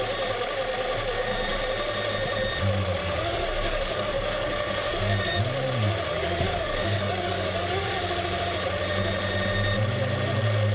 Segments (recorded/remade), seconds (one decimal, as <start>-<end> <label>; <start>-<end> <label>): 0.0-3.0 recorded; 3.0-5.4 remade; 5.4-6.1 recorded; 6.1-7.8 remade; 7.8-10.7 recorded